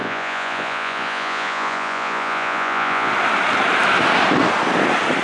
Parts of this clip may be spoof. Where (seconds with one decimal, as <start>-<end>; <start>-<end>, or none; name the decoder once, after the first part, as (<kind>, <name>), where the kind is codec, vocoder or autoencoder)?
0.0-3.1 (vocoder, Vocos)